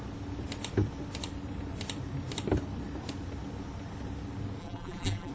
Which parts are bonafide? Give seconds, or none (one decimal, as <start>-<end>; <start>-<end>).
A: 0.0-4.6